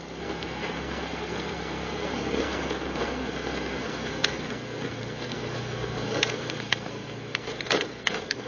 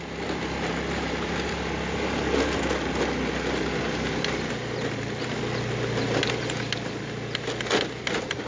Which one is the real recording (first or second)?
second